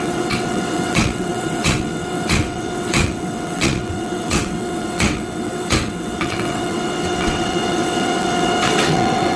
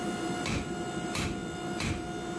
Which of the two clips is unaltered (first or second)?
second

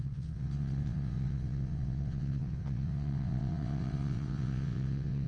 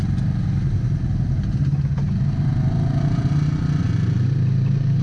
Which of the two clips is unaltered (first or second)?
second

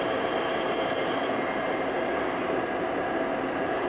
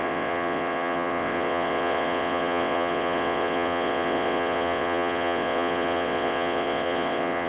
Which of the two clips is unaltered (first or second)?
first